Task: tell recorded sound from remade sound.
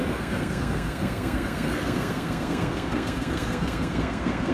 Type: remade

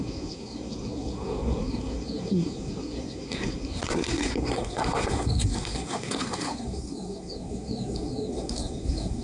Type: remade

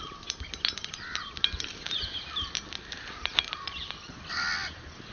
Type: remade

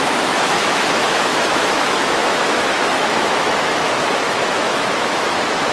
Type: remade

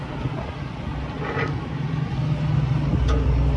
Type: recorded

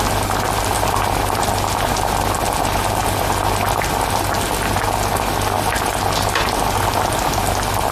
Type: recorded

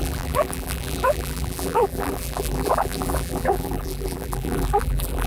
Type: remade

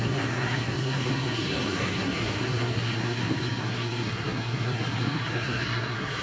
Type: remade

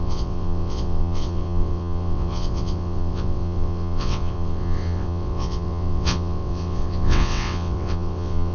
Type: remade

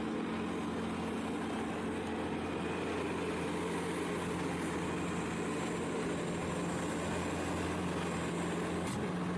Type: recorded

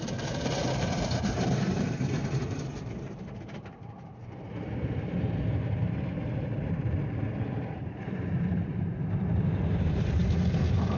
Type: remade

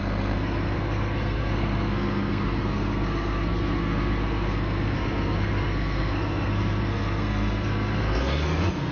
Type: remade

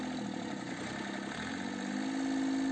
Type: recorded